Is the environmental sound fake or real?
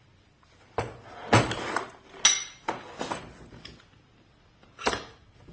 real